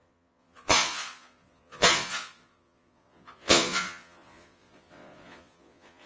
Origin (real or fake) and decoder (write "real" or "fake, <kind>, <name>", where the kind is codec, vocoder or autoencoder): fake, vocoder, Vocos